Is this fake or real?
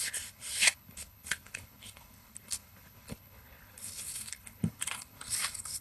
fake